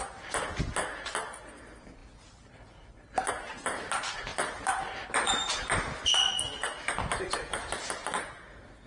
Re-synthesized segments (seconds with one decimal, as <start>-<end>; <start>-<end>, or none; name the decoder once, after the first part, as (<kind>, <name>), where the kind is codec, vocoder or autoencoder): 2.0-3.3 (vocoder, BigVGAN v2)